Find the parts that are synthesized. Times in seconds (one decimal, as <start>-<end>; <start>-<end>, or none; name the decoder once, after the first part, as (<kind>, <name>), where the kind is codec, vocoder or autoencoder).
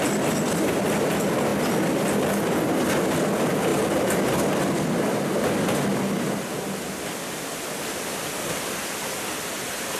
none